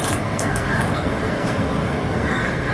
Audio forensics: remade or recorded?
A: remade